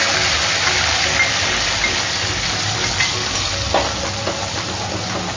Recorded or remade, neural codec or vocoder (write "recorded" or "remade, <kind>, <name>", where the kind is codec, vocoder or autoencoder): recorded